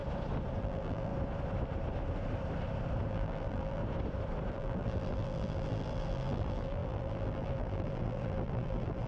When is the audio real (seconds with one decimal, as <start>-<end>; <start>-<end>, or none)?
0.0-0.6; 1.1-3.1; 3.8-4.5